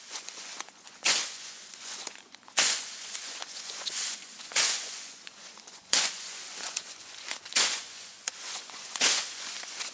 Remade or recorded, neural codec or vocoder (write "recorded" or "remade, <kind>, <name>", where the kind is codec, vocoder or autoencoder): remade, vocoder, Vocos